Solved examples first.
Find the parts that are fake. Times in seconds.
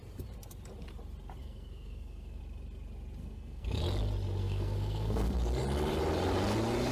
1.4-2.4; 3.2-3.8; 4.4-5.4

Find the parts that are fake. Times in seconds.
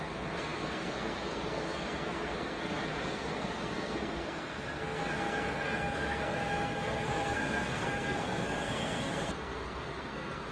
0.0-10.5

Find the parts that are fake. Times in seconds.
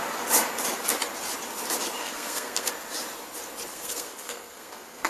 2.0-2.7; 3.7-5.1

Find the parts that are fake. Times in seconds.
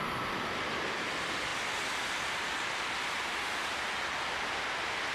none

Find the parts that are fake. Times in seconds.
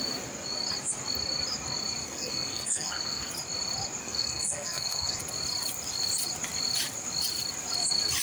2.0-3.3; 4.0-5.2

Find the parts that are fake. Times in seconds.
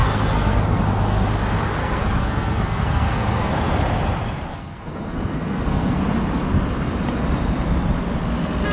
0.0-0.8; 1.8-3.5; 4.5-6.0